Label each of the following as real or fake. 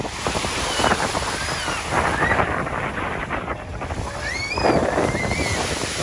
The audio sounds real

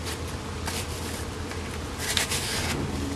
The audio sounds real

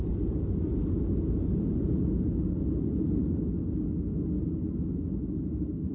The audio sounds real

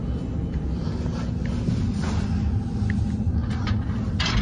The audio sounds real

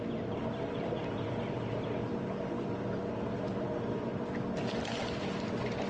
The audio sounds fake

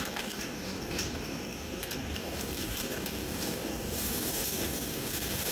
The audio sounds fake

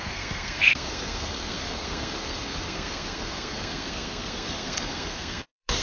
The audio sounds fake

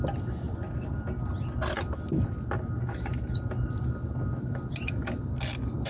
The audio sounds real